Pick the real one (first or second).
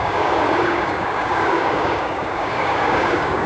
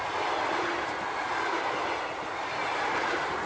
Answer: second